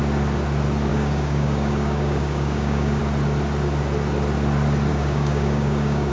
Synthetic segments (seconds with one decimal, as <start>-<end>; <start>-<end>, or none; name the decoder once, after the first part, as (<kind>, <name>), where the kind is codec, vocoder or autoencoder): 0.9-3.0 (codec, DAC); 4.9-6.1